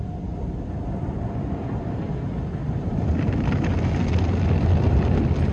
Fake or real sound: real